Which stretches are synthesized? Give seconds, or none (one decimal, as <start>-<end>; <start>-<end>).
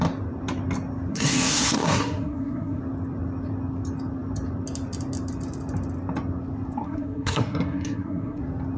1.1-2.8; 6.8-8.4